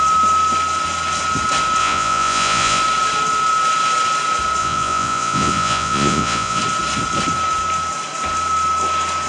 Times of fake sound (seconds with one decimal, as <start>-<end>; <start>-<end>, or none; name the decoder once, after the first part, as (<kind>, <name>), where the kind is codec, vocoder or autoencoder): 1.8-2.8 (vocoder, Vocos); 4.6-6.6